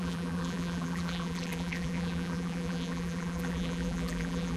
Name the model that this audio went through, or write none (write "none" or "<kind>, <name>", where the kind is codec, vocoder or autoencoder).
vocoder, BigVGAN v2